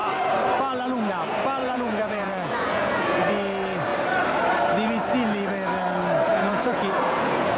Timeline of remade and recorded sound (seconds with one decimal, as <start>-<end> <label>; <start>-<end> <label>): 0.0-1.6 recorded; 1.6-3.3 remade; 3.3-6.3 recorded; 6.3-7.6 remade